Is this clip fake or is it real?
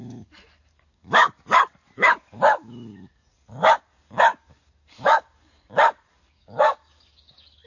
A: fake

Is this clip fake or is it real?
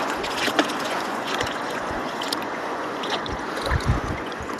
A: fake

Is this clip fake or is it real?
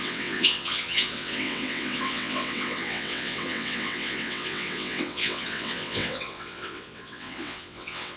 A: fake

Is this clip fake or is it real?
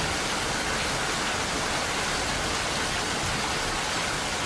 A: real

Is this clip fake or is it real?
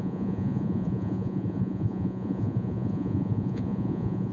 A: fake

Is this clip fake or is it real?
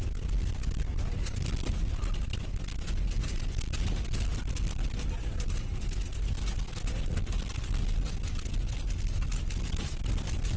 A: real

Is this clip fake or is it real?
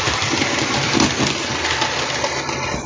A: fake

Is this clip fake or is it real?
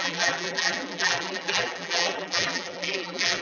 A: fake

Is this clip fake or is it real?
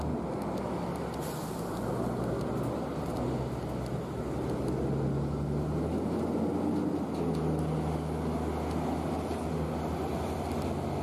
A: real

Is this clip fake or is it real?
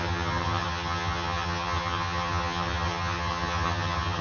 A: fake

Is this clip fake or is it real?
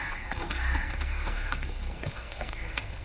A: fake